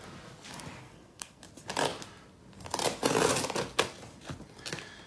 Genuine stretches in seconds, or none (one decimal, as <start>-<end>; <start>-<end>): 0.0-0.8; 1.4-5.1